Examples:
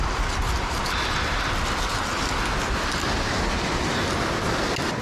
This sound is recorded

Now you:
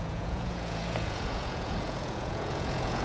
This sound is remade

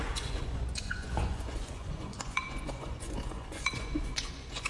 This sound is remade